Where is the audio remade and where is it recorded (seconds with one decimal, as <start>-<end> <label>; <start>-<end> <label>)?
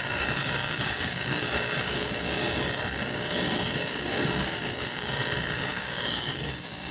0.0-6.9 remade